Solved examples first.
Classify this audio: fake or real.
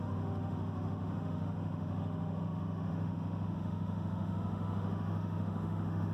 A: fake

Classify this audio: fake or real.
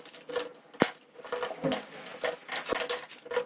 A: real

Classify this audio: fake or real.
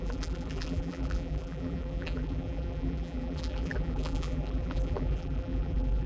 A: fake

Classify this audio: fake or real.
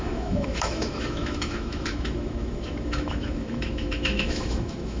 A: fake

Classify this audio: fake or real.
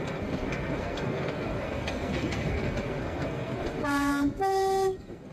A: fake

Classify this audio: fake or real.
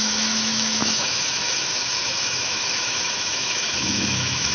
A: fake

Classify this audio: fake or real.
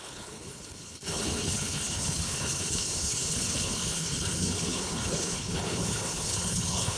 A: fake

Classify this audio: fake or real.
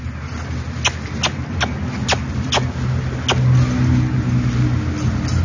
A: real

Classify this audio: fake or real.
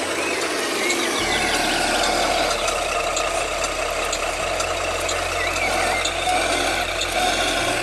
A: real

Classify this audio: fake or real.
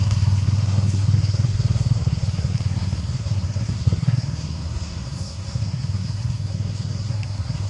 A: fake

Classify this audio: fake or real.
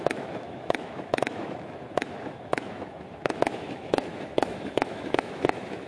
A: fake